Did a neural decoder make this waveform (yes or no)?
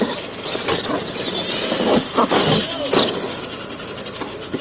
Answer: no